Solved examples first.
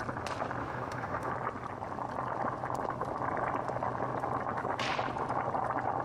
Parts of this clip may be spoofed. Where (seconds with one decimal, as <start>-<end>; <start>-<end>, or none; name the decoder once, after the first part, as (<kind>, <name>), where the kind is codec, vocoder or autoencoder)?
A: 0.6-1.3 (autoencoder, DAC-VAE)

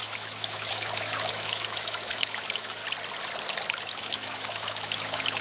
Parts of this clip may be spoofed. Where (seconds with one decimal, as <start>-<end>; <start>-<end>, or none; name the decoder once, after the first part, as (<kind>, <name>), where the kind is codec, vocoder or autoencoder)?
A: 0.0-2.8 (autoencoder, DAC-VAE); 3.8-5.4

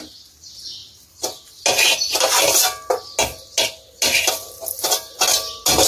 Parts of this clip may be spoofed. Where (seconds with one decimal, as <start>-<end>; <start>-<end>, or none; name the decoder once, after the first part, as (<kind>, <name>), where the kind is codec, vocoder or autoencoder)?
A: none

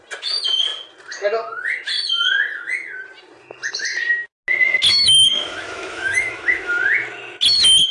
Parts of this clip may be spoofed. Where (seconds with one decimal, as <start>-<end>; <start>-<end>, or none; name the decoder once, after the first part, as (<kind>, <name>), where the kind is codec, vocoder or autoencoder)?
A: 4.9-6.7 (autoencoder, DAC-VAE)

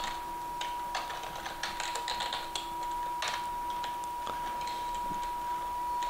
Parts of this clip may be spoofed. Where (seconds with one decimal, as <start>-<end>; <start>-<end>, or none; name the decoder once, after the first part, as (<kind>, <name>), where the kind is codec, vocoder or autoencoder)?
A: none

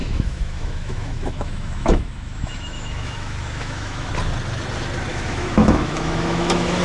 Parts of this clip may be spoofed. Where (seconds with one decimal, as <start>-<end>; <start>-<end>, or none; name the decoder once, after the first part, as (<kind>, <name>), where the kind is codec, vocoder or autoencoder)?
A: 0.0-4.1 (autoencoder, DAC-VAE); 5.1-6.8

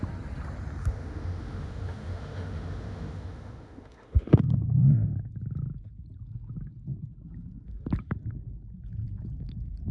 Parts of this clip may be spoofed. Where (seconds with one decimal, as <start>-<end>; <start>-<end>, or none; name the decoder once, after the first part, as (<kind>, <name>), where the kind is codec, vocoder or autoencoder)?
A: 0.8-5.3 (autoencoder, DAC-VAE)

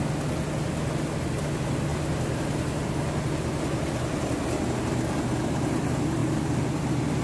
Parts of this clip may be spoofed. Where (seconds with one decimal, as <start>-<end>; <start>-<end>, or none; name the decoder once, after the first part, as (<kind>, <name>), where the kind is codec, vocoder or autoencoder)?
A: none